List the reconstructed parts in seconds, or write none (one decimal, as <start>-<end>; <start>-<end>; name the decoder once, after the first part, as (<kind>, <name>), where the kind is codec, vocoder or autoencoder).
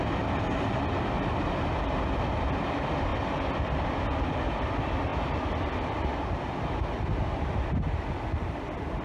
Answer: none